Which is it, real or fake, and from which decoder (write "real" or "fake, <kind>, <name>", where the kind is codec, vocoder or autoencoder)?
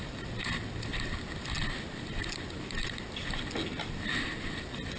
real